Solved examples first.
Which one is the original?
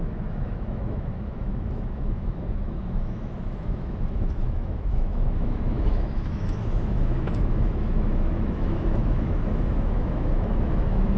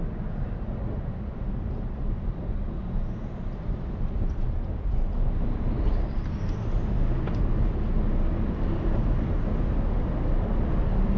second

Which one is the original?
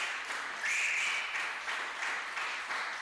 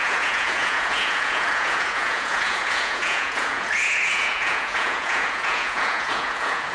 first